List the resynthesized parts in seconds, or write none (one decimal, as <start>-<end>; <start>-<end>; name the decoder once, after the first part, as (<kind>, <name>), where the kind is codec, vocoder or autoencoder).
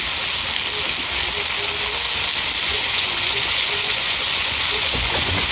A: 2.6-5.5 (vocoder, Vocos)